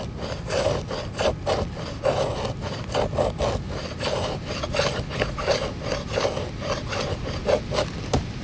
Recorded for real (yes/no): yes